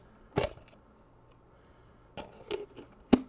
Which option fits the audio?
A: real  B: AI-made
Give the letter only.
A